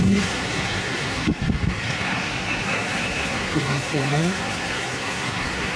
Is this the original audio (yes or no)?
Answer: no